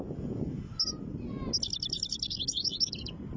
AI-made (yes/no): no